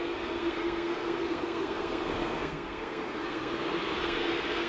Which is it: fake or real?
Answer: fake